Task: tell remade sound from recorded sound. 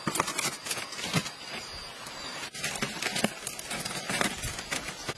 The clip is recorded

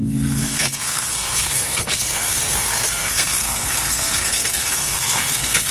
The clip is remade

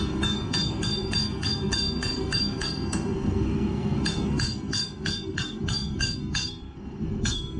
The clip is remade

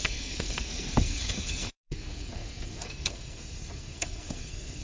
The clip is remade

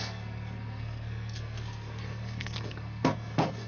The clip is remade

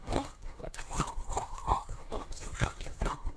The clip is remade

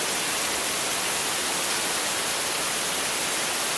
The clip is recorded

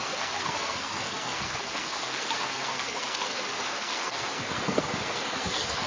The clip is remade